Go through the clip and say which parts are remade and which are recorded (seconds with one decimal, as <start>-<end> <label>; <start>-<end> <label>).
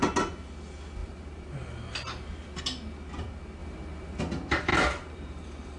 0.0-1.0 recorded; 1.0-2.6 remade; 2.6-3.6 recorded; 3.6-4.2 remade; 4.2-4.7 recorded; 4.7-5.8 remade